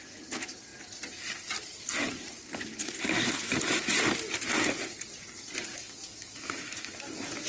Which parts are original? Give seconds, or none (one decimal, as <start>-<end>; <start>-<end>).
0.0-5.7; 7.1-7.5